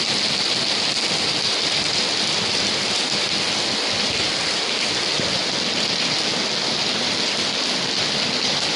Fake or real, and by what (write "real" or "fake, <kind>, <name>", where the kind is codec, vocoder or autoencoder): real